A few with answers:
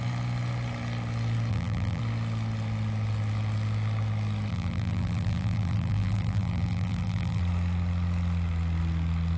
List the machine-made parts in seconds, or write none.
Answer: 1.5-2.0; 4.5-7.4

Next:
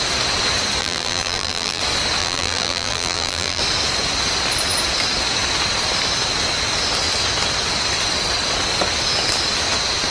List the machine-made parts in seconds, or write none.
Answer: 0.8-1.8; 2.2-3.6

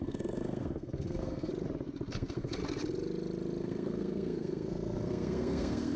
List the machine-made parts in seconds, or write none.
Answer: 0.0-1.5; 2.1-2.6; 3.6-6.0

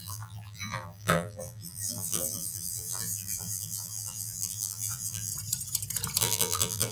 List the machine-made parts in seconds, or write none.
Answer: 0.0-5.3; 6.2-6.9

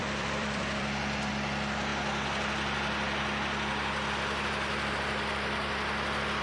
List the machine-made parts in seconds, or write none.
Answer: 0.0-1.3

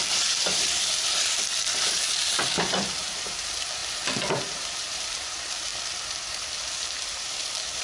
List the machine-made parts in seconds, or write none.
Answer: 0.0-3.8; 4.3-5.7; 6.4-7.8

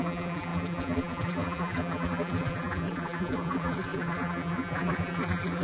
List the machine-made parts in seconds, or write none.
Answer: 0.0-5.6

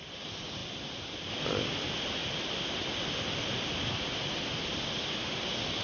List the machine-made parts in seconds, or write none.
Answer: 0.0-2.2